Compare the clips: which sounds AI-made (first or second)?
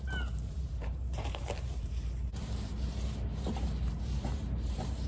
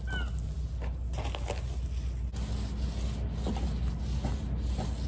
first